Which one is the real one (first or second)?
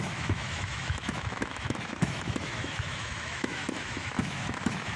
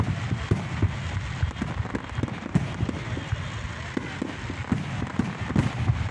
second